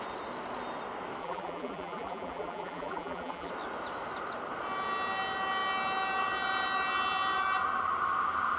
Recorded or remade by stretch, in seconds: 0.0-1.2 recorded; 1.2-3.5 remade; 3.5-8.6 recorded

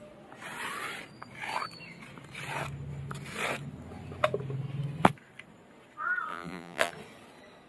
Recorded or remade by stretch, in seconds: 0.0-6.3 recorded; 6.3-6.9 remade; 6.9-7.7 recorded

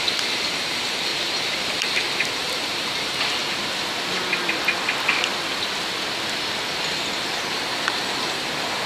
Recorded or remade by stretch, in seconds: 0.0-1.1 remade; 1.1-1.7 recorded; 1.7-3.4 remade; 3.4-7.2 recorded; 7.2-8.9 remade

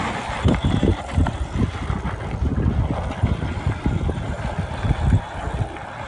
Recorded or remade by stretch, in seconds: 0.0-0.9 recorded; 0.9-1.7 remade; 1.7-6.1 recorded

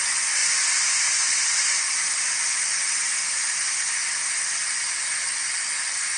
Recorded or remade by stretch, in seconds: 0.0-6.2 recorded

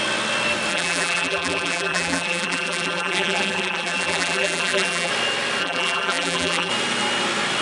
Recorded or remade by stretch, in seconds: 0.0-0.7 recorded; 0.7-5.1 remade; 5.1-5.6 recorded; 5.6-6.7 remade; 6.7-7.6 recorded